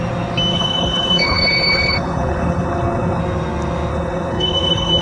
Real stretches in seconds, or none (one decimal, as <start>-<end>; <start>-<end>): 0.0-0.5; 3.2-3.9